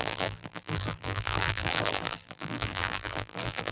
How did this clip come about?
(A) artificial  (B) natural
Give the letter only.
A